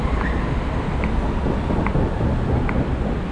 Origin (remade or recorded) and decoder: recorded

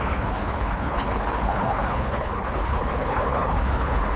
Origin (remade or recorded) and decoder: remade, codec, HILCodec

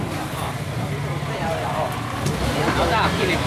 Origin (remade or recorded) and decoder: recorded